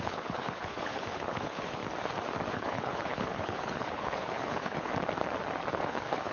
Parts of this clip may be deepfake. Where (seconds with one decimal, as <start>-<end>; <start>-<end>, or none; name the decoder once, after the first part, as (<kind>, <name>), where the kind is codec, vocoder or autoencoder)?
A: 0.0-1.8 (codec, HILCodec); 2.5-4.9; 5.7-6.3

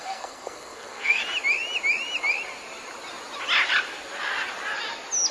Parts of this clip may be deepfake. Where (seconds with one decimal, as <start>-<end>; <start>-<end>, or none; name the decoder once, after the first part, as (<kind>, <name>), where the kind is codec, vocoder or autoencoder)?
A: 0.0-1.2 (codec, SNAC)

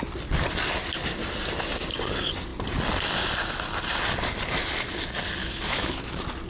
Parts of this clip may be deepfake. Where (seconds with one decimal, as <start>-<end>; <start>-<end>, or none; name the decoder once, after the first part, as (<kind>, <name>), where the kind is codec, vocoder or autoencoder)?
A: 5.4-6.1 (autoencoder, DAC-VAE)

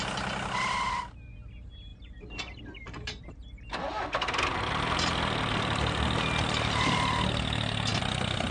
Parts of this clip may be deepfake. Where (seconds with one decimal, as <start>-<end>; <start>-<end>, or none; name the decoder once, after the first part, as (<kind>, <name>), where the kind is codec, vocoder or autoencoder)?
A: none